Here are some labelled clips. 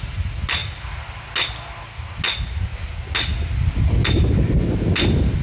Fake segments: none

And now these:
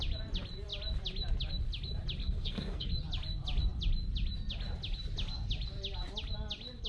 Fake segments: 2.2-2.9 (codec, SNAC)

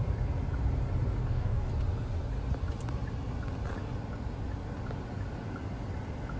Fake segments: 1.2-1.7 (codec, DAC)

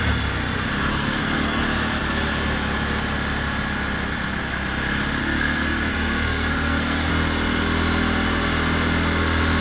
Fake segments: 0.9-1.6 (codec, SNAC); 5.2-7.1

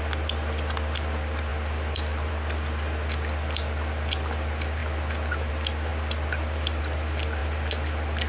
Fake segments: none